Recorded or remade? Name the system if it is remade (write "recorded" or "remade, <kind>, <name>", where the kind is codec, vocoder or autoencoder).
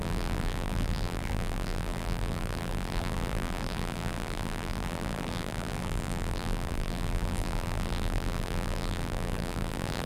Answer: remade, vocoder, BigVGAN v2